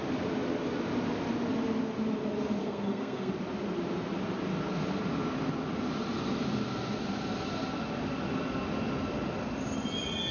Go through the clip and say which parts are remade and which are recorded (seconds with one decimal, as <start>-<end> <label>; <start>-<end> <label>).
0.0-2.6 recorded; 2.6-3.3 remade; 3.3-10.3 recorded